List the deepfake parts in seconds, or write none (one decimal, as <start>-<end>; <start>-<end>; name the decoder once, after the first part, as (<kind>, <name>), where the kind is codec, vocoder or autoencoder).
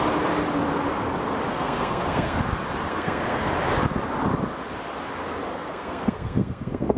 1.5-2.4 (codec, SNAC); 2.9-3.5; 5.5-7.0